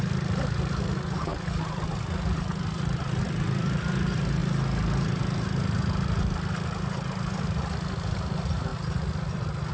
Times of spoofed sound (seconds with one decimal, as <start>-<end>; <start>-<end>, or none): none